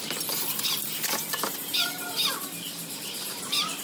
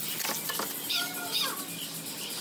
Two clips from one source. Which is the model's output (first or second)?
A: first